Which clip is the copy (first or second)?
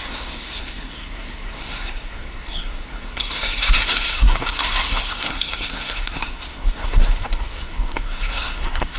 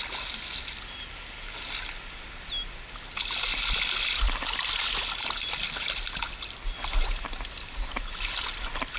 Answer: first